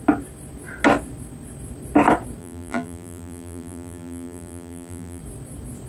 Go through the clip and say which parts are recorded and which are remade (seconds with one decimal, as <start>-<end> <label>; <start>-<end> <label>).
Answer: 0.0-2.4 recorded; 2.4-5.2 remade; 5.2-5.9 recorded

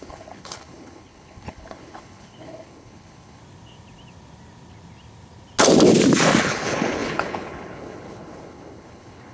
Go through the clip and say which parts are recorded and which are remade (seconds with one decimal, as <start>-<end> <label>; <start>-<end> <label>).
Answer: 0.0-3.4 remade; 3.4-6.4 recorded; 6.4-9.3 remade

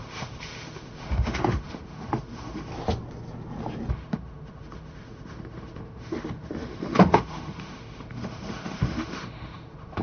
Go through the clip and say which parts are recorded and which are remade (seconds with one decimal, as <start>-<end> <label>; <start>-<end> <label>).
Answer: 0.0-2.7 remade; 2.7-3.9 recorded; 3.9-10.0 remade

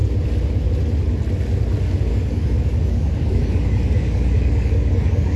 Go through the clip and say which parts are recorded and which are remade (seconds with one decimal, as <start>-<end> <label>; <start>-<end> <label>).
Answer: 0.0-2.1 recorded; 2.1-5.4 remade

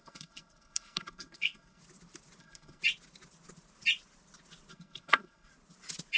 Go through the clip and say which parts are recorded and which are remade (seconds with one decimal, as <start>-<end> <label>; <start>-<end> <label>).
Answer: 0.0-1.8 remade; 1.8-2.4 recorded; 2.4-2.8 remade; 2.8-4.7 recorded; 4.7-5.5 remade; 5.5-6.2 recorded

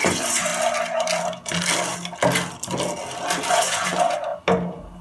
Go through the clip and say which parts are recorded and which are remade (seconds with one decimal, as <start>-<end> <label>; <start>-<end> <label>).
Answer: 0.0-0.5 remade; 0.5-3.5 recorded; 3.5-4.3 remade; 4.3-5.0 recorded

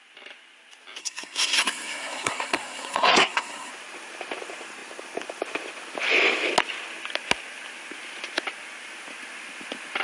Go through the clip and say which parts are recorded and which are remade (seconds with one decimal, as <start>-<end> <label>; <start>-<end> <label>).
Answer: 0.0-1.0 recorded; 1.0-3.7 remade; 3.7-10.0 recorded

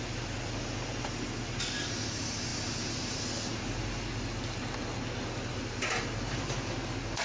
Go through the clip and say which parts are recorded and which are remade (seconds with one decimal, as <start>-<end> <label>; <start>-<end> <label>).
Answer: 0.0-7.2 recorded